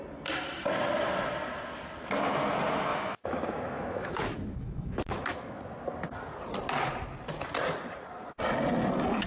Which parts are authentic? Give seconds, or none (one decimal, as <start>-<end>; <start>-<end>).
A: 0.0-2.9; 5.6-9.3